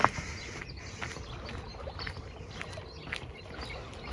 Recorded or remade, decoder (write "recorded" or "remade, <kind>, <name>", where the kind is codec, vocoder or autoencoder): recorded